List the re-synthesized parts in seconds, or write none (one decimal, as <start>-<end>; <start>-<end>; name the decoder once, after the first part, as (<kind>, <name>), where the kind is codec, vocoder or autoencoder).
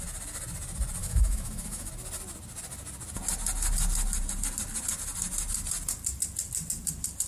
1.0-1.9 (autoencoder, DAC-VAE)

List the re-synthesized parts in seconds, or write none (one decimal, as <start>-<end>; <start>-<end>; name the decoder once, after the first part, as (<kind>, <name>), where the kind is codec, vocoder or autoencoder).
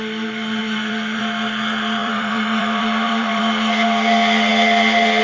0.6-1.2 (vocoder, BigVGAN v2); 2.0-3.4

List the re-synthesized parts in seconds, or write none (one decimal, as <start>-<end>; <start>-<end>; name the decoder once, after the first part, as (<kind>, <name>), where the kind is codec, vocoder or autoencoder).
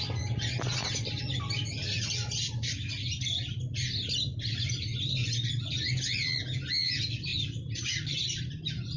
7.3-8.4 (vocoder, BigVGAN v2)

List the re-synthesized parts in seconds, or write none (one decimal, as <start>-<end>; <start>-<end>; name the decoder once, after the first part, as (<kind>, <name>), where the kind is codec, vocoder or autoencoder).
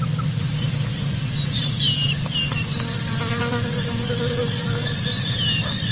4.4-4.9 (codec, DAC)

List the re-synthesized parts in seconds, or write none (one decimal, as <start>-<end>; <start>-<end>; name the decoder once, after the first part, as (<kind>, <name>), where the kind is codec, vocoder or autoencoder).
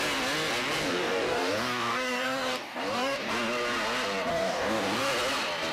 0.8-3.3 (codec, DAC); 4.3-5.1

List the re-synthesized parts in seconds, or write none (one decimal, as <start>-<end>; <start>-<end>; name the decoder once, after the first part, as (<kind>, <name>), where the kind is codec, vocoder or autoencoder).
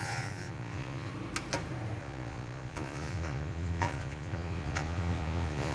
0.0-1.1 (vocoder, Vocos); 2.0-5.7